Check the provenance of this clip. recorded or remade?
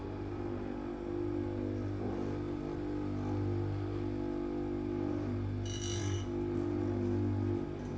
recorded